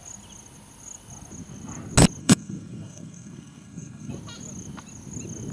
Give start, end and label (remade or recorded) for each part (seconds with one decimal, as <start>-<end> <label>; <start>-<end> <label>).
0.0-2.2 recorded; 2.2-4.1 remade; 4.1-5.5 recorded